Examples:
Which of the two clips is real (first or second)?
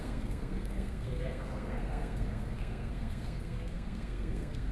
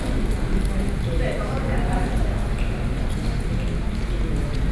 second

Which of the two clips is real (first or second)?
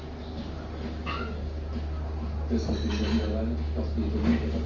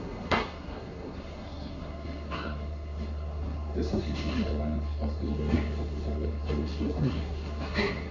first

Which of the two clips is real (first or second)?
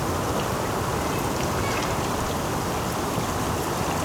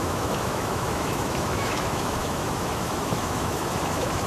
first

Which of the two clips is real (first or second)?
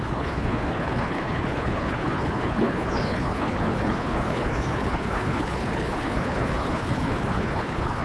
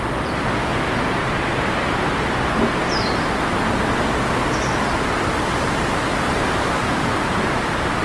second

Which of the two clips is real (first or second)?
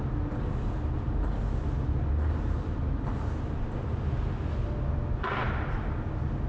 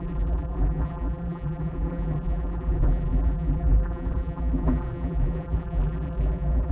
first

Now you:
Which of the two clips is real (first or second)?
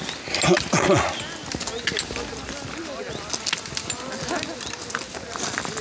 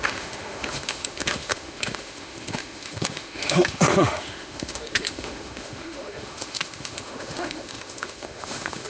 first